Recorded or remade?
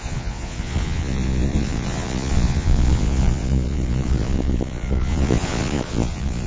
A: remade